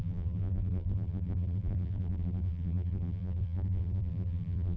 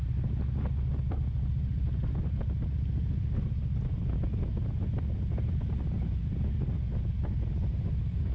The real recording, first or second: second